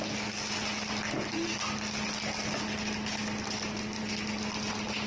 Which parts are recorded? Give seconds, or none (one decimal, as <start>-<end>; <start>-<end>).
0.0-5.1